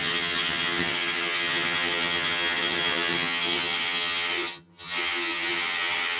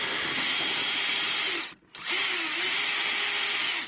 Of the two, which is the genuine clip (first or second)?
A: second